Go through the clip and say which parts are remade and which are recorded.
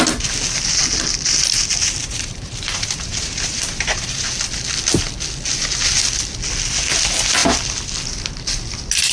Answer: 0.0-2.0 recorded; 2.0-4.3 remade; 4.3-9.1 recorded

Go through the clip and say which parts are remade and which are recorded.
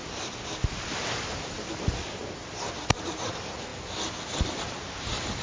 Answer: 0.0-0.7 recorded; 0.7-2.2 remade; 2.2-3.0 recorded; 3.0-5.4 remade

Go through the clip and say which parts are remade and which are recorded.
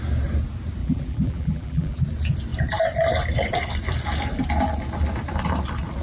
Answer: 0.0-0.8 recorded; 0.8-2.0 remade; 2.0-6.0 recorded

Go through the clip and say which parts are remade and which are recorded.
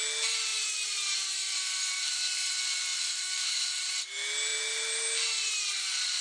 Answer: 0.0-0.5 recorded; 0.5-2.5 remade; 2.5-2.9 recorded; 2.9-3.9 remade; 3.9-6.2 recorded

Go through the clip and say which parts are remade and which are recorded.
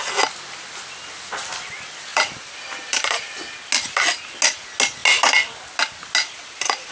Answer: 0.0-2.1 recorded; 2.1-3.4 remade; 3.4-6.9 recorded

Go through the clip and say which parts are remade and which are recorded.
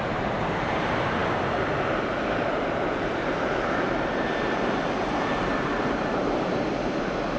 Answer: 0.0-1.2 remade; 1.2-2.9 recorded; 2.9-7.4 remade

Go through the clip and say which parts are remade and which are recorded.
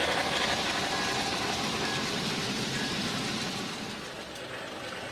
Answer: 0.0-1.1 recorded; 1.1-3.5 remade; 3.5-5.1 recorded